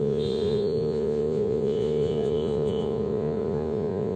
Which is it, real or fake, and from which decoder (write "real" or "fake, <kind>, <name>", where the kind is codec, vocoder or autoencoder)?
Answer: fake, vocoder, Vocos